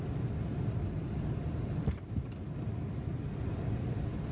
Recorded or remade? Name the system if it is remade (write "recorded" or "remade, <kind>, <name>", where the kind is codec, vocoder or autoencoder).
recorded